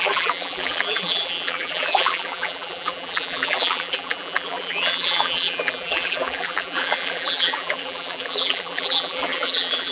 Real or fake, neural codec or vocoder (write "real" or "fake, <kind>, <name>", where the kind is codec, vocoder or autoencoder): fake, vocoder, BigVGAN v2